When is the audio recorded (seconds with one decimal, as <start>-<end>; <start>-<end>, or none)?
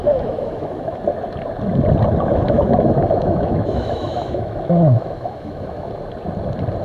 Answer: 1.0-2.3; 5.9-6.8